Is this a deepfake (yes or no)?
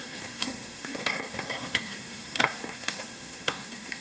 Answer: yes